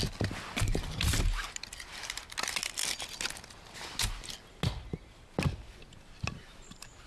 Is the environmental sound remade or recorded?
recorded